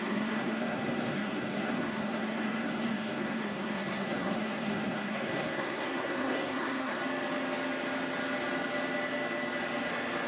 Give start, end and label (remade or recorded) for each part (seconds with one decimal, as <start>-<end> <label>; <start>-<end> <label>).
0.0-7.0 remade; 7.0-10.3 recorded